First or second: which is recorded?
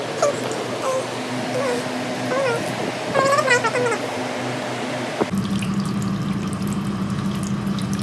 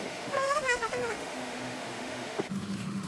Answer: first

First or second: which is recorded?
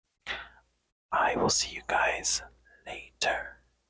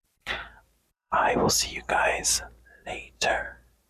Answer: first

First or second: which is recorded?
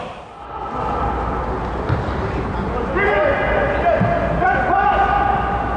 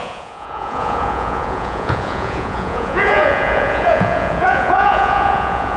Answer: first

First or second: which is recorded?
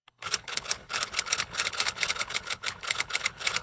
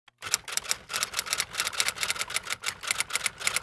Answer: second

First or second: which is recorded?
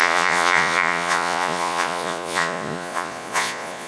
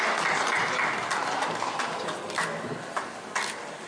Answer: second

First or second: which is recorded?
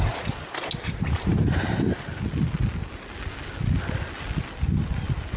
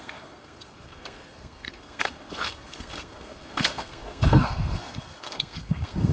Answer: first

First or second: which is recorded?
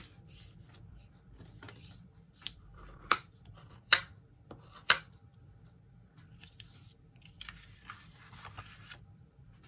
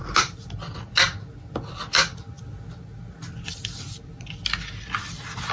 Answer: second